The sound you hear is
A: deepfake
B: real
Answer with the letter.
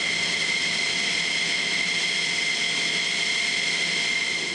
B